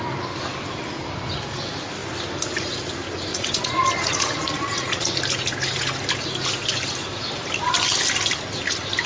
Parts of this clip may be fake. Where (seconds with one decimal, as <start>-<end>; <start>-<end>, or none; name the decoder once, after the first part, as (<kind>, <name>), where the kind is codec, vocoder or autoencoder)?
3.3-5.2 (vocoder, Vocos)